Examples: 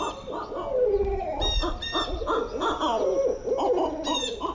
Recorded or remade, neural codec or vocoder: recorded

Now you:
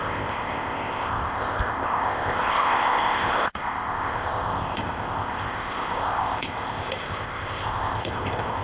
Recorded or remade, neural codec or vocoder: remade, codec, ZipCodec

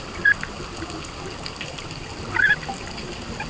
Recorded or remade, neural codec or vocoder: recorded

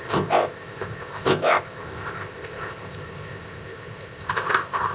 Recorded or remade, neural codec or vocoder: remade, codec, ZipCodec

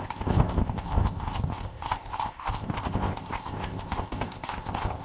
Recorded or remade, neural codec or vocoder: remade, codec, ZipCodec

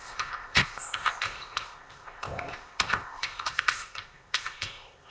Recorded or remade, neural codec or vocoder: remade, codec, ZipCodec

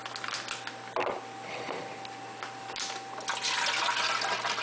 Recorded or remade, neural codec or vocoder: recorded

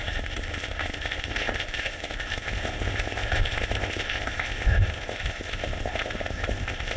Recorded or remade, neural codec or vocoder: remade, codec, ZipCodec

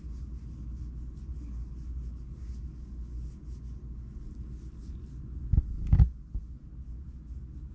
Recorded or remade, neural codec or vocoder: recorded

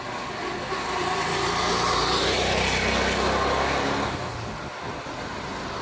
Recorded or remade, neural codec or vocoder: recorded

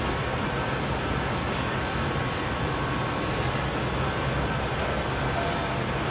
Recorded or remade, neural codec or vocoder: recorded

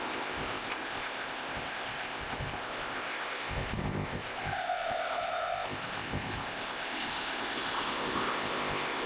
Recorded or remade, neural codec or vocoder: remade, codec, ZipCodec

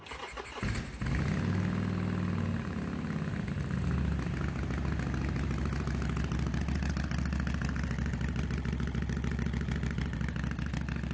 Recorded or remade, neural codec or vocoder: recorded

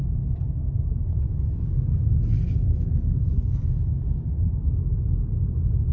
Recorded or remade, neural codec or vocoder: recorded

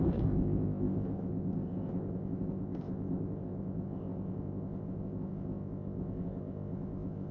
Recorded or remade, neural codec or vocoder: remade, codec, ZipCodec